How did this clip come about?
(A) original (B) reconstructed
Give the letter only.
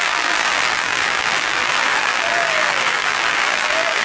B